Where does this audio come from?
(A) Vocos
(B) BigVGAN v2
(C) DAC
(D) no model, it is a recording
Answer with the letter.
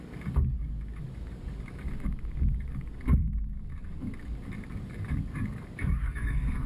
C